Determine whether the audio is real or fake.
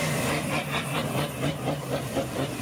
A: fake